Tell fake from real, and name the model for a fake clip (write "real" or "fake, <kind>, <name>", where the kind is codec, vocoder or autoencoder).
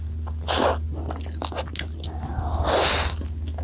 real